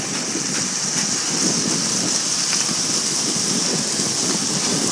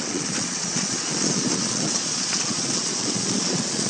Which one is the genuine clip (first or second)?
first